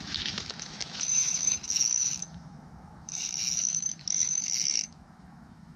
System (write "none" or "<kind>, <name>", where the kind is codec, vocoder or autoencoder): autoencoder, DAC-VAE